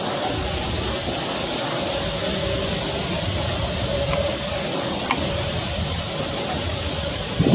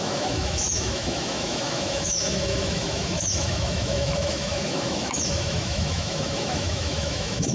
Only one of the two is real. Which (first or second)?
first